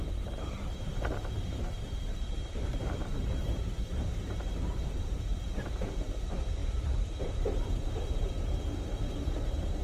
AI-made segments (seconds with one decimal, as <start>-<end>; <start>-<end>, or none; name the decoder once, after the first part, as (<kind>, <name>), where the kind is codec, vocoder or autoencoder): 0.0-9.8 (vocoder, BigVGAN v2)